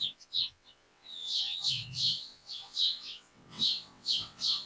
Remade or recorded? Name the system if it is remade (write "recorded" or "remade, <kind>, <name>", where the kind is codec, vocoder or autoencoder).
remade, vocoder, WaveNeXt